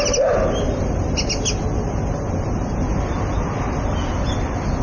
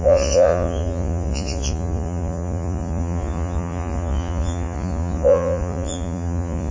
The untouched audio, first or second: first